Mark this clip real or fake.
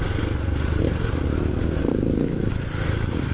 real